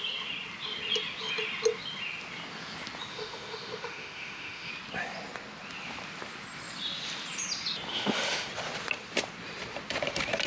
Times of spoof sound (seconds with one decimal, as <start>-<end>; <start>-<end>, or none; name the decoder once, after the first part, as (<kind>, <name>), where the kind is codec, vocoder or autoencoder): 3.1-4.7 (autoencoder, DAC-VAE); 7.9-8.5